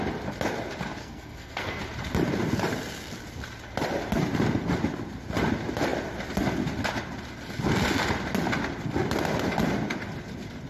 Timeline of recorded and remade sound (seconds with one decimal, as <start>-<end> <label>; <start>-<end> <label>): 0.0-1.0 recorded; 1.0-1.8 remade; 1.8-10.7 recorded